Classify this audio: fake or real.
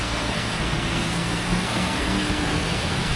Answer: fake